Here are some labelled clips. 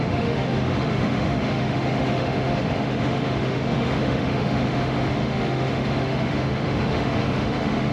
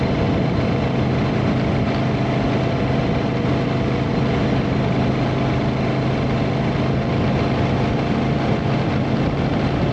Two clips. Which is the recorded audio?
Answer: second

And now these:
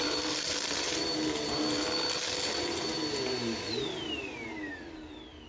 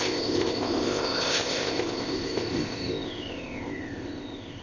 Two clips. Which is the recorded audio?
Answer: first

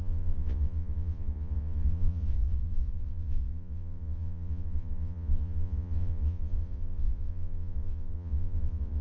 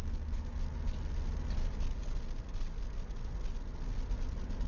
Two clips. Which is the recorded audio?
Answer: second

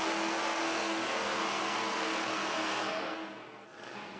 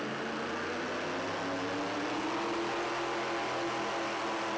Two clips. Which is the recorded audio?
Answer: second